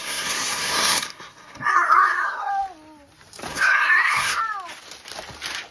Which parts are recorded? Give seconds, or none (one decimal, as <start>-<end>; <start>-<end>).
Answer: 2.5-3.5; 4.4-5.7